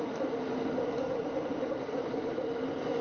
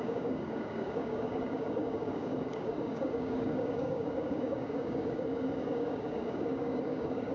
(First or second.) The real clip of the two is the first